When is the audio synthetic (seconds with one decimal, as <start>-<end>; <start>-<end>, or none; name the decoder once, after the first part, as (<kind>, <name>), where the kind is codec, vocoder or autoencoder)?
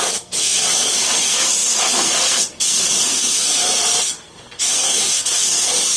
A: 0.0-6.0 (codec, SNAC)